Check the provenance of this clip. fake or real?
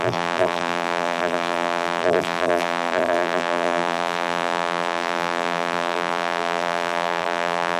fake